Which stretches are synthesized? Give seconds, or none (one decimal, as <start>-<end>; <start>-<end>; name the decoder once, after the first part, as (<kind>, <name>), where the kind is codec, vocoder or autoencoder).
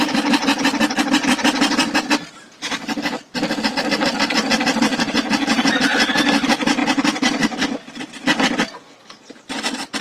6.8-8.0 (vocoder, BigVGAN v2)